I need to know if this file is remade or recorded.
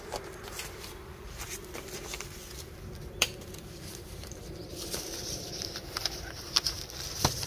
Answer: remade